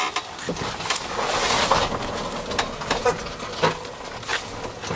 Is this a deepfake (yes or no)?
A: no